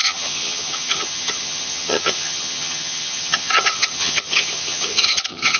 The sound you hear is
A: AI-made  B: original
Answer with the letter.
A